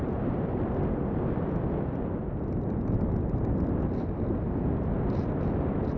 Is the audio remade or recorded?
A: recorded